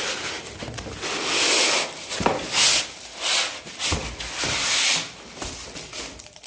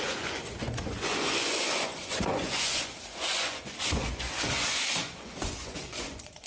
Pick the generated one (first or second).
second